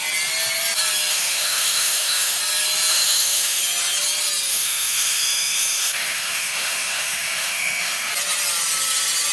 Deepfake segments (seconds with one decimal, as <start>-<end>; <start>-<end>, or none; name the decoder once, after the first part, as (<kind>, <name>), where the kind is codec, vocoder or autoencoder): 1.1-2.4 (autoencoder, DAC-VAE); 2.9-3.6; 4.5-8.1